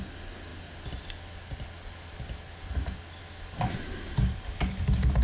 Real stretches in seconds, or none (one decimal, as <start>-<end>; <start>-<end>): 0.0-5.2